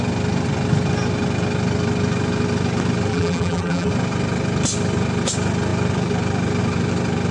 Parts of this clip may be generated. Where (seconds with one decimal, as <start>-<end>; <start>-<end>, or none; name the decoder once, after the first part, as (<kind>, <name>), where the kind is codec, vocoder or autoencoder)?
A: 3.1-3.9 (vocoder, BigVGAN v2)